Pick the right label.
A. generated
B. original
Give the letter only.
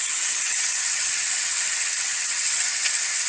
A